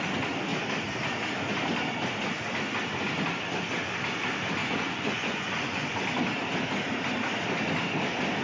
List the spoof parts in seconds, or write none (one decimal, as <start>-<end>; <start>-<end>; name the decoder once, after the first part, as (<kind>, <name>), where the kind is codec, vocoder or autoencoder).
4.6-6.0 (vocoder, Vocos)